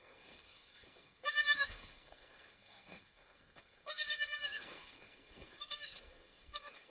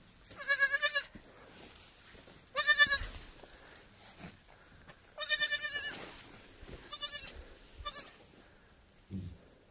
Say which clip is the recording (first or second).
second